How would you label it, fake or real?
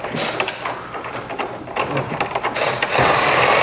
real